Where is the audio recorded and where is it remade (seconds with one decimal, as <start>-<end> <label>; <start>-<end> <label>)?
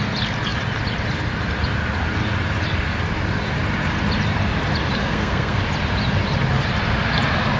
0.0-5.0 recorded; 5.0-5.6 remade; 5.6-7.6 recorded